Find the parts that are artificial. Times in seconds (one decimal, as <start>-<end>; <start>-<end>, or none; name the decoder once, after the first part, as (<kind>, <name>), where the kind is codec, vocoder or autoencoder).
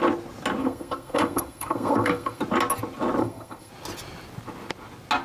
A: 0.6-2.4 (codec, SNAC); 3.2-3.7